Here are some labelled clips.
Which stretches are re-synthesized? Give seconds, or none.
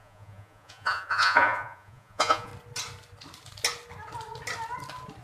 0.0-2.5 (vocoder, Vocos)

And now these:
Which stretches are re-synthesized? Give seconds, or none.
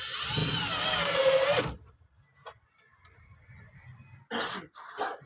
none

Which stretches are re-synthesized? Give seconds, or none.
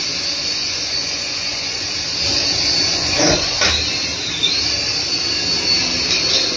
0.4-1.9 (vocoder, Vocos); 2.9-3.6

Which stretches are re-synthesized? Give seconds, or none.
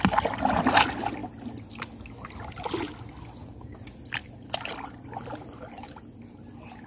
1.2-1.9 (vocoder, BigVGAN v2); 4.2-6.2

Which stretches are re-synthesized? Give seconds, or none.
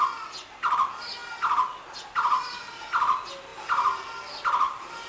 none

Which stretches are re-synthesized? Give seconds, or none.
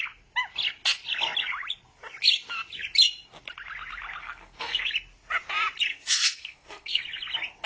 4.2-4.9 (codec, SNAC); 5.9-7.0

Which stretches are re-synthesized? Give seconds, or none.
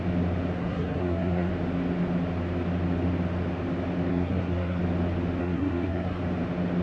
0.6-1.5 (codec, SNAC); 4.1-4.8; 5.4-6.2